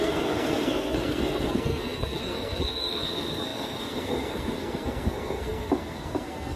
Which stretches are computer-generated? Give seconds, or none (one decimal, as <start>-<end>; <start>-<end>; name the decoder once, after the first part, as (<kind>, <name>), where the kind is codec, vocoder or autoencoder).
0.0-6.6 (codec, SNAC)